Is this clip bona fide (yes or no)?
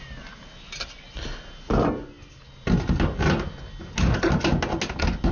yes